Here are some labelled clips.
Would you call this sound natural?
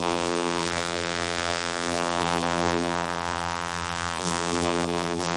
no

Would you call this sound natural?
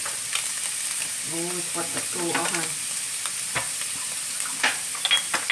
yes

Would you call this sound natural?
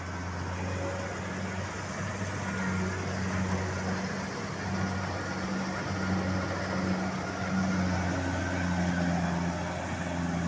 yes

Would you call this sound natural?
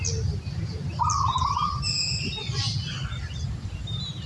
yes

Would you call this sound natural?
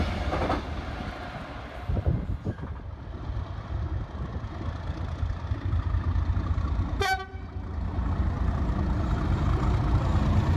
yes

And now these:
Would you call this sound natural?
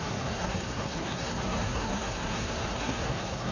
no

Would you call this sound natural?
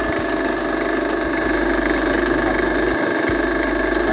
yes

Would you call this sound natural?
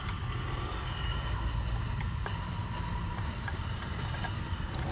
no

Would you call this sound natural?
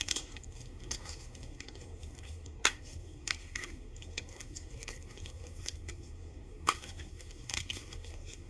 no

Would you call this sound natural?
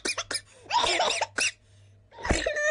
yes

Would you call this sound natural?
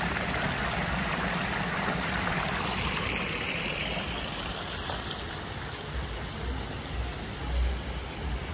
yes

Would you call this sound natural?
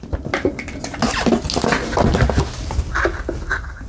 yes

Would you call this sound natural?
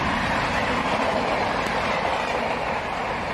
yes